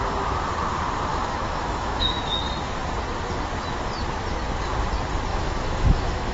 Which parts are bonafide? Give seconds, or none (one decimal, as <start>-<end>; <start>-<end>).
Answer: 0.0-1.1; 2.3-5.3